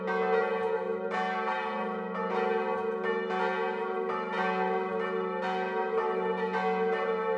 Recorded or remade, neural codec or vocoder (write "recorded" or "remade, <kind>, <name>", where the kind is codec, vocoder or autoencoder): recorded